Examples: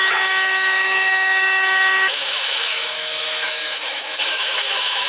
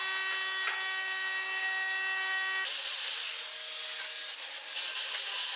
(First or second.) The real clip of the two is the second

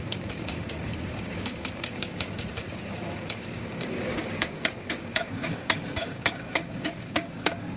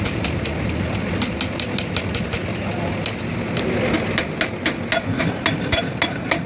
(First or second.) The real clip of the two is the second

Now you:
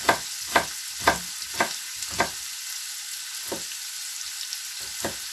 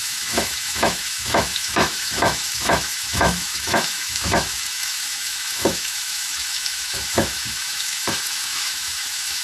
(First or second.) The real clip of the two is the first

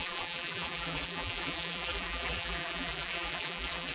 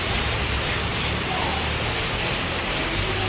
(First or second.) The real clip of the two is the second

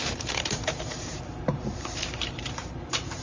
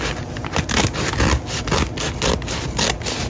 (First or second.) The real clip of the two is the second